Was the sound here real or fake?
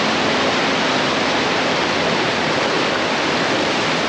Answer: real